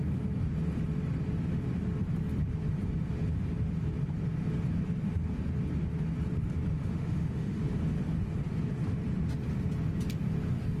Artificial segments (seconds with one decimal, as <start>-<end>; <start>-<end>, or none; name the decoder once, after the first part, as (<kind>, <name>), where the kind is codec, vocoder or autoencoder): 6.7-7.6 (autoencoder, DAC-VAE)